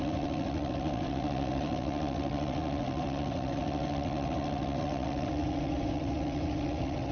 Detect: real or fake fake